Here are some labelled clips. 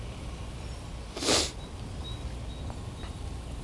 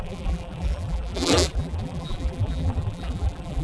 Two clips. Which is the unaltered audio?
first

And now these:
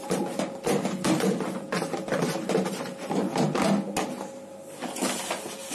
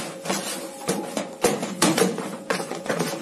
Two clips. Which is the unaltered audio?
first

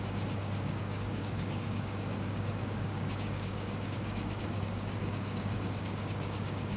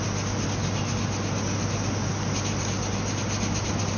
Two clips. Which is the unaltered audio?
second